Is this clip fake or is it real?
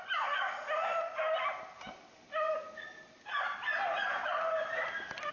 real